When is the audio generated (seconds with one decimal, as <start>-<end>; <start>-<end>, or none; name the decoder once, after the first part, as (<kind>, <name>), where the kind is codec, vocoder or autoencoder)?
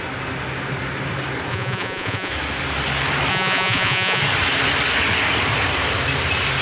1.5-2.3 (vocoder, Vocos); 3.3-4.2